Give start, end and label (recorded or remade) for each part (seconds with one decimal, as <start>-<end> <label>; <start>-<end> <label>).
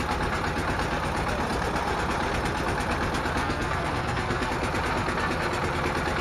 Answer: 0.0-3.4 recorded; 3.4-4.5 remade; 4.5-6.2 recorded